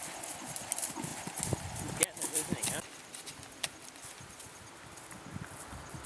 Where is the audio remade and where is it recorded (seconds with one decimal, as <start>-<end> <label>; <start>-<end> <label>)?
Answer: 0.0-6.1 recorded